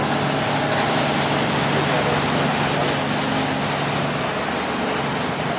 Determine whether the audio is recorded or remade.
recorded